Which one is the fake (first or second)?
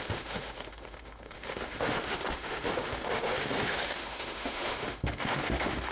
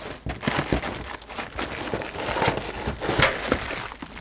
first